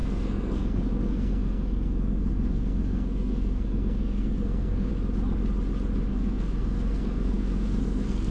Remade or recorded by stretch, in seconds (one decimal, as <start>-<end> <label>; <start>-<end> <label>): 0.0-4.9 remade; 4.9-6.1 recorded; 6.1-8.3 remade